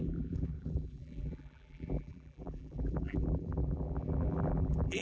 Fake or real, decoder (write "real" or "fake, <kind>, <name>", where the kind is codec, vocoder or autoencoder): fake, vocoder, BigVGAN v2